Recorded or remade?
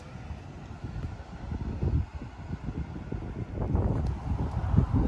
recorded